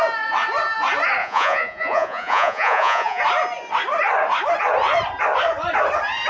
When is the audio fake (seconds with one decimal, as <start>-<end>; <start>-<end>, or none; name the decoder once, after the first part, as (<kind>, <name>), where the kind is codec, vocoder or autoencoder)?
1.2-3.2 (vocoder, Vocos)